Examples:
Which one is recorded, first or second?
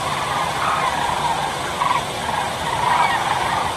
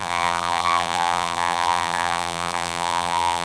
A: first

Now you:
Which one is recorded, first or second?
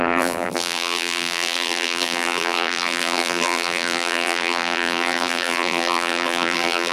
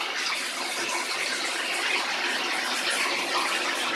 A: second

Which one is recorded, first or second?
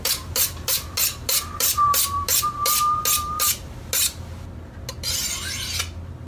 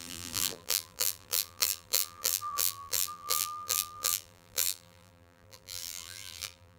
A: first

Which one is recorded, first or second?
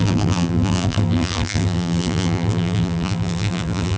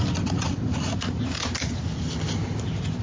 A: second